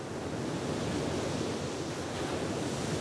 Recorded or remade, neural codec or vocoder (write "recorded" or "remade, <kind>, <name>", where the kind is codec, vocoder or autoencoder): recorded